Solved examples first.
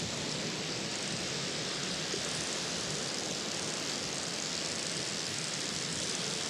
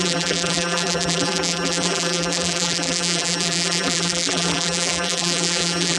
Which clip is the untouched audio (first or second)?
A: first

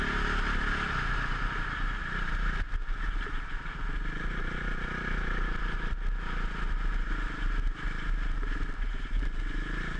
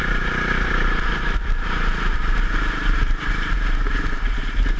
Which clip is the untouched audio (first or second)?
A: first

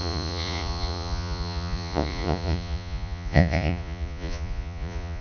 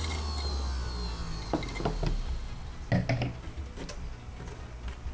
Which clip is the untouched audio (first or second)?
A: second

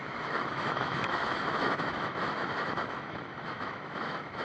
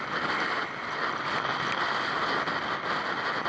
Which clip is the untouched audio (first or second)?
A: second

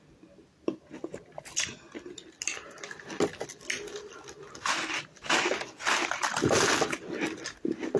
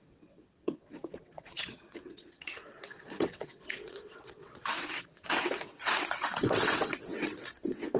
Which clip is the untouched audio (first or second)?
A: first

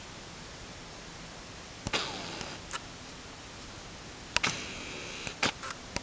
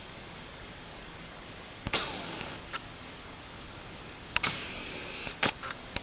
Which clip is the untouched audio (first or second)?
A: first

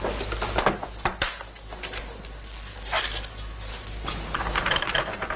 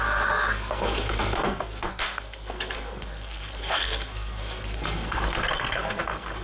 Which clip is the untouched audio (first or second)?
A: first